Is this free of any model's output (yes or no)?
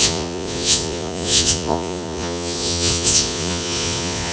no